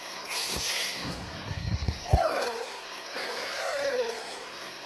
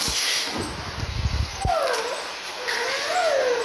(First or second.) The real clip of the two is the second